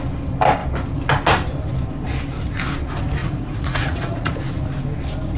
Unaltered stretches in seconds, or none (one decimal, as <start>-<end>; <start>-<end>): 0.0-3.2; 4.3-5.4

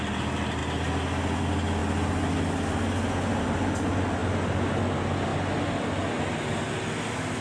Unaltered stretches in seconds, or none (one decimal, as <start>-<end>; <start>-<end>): 0.0-7.4